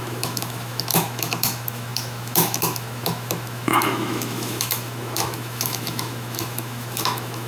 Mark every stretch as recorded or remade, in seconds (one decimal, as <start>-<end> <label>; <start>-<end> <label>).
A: 0.0-7.5 remade